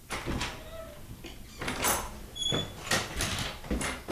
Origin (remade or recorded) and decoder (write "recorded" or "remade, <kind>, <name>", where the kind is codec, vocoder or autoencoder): recorded